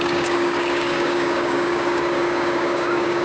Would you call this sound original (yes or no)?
no